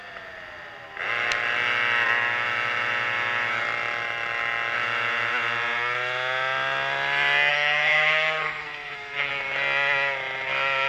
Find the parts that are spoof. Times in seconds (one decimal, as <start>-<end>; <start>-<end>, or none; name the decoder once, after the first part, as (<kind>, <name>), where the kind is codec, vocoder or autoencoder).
7.5-9.3 (codec, SNAC)